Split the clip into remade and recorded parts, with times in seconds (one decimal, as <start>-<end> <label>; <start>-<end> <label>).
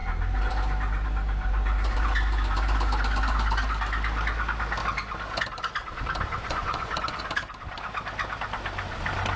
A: 0.0-6.4 recorded; 6.4-7.2 remade; 7.2-9.4 recorded